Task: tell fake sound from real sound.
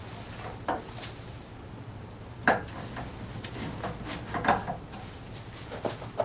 real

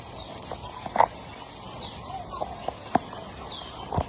real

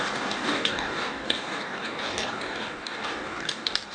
fake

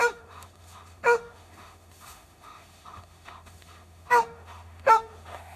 fake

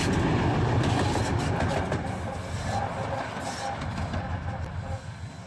real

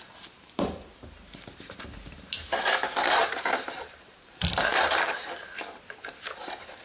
fake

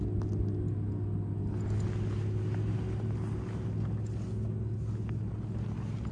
real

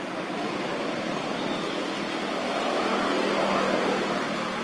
real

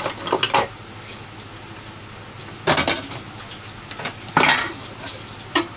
real